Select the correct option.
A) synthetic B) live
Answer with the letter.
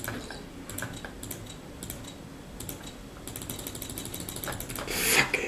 B